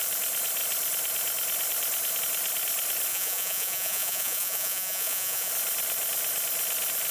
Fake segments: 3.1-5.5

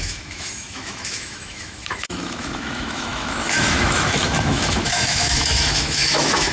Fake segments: 0.0-6.5

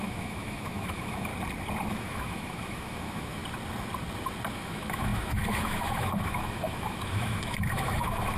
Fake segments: 0.0-1.3; 1.9-3.4; 4.5-8.4

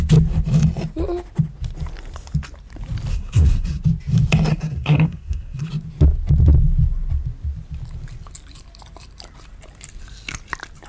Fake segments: 3.1-3.8; 4.5-5.7